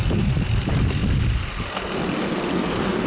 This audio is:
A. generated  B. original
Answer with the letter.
B